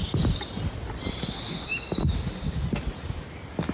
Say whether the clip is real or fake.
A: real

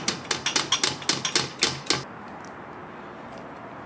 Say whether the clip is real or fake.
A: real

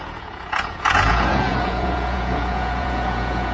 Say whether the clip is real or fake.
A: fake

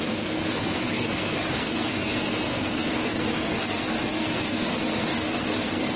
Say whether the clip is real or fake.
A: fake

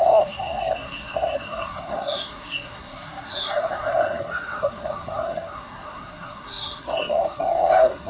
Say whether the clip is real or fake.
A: fake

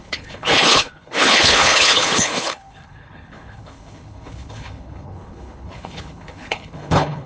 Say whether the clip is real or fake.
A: fake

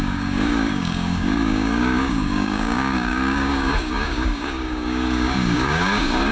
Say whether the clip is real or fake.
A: fake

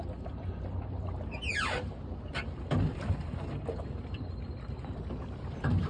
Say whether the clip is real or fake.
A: real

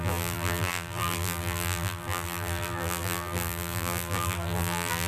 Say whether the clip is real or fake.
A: fake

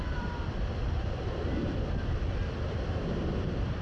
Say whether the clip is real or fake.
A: fake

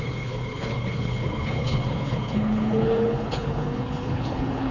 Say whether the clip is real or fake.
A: fake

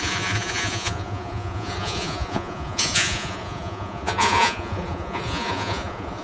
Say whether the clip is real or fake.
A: fake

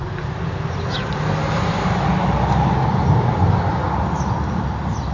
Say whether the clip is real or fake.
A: real